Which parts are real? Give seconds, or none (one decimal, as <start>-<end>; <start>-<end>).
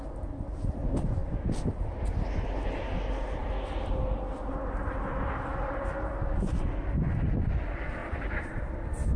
0.0-1.2; 1.9-8.0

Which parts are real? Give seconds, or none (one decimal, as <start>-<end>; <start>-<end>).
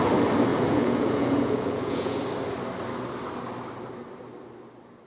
0.0-0.5; 2.2-5.1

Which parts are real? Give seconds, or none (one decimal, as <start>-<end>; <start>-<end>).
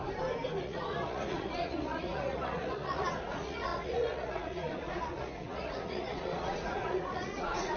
0.0-0.6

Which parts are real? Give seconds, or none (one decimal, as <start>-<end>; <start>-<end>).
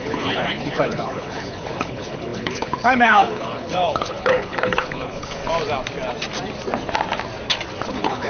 5.4-7.9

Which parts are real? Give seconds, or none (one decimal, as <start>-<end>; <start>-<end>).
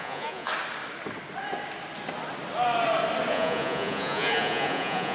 0.5-3.3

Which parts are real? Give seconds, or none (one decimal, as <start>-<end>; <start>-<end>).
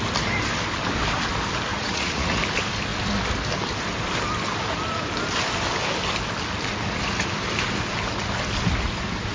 0.0-1.7; 2.4-9.3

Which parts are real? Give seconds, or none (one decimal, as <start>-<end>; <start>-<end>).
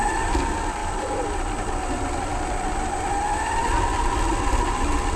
0.0-5.2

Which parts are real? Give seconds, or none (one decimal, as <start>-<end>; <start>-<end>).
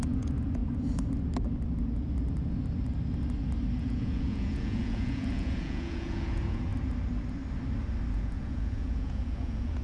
0.6-3.8; 6.7-8.1